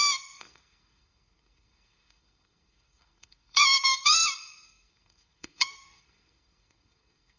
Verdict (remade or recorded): remade